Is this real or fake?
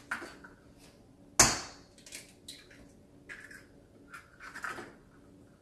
real